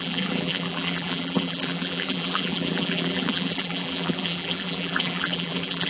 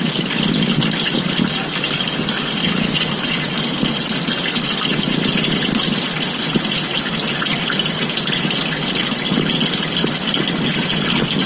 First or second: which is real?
second